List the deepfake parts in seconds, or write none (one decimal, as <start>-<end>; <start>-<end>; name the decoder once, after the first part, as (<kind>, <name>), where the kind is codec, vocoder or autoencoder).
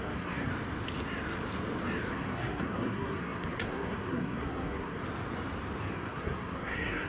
0.0-0.5 (codec, SNAC); 2.1-5.0; 5.8-7.1